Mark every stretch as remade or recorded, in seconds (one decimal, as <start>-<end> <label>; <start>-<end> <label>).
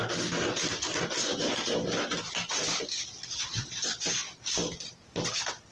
0.0-5.7 recorded